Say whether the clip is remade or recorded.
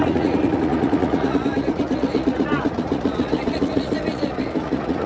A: remade